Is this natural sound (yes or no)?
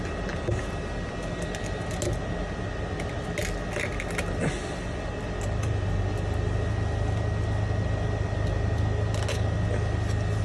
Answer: yes